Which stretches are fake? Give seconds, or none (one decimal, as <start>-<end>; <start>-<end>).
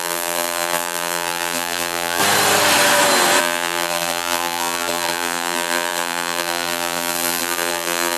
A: 0.0-2.2; 3.4-8.2